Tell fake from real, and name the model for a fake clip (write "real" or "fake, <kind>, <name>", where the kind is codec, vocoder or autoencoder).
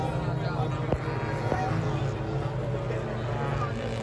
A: real